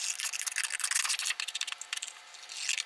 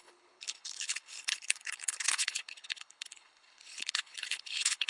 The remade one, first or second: second